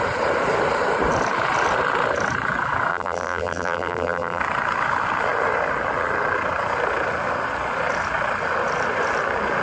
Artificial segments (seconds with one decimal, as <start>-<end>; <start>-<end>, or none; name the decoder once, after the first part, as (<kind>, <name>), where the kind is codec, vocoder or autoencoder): 2.9-4.4 (vocoder, BigVGAN v2)